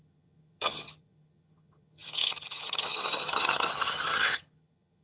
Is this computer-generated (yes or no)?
yes